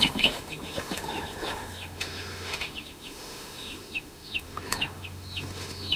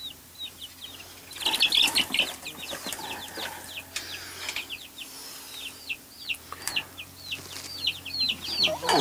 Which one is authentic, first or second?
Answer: second